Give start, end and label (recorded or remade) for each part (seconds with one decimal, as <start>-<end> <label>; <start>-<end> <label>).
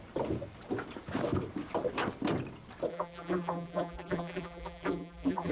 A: 0.0-2.9 recorded; 2.9-5.5 remade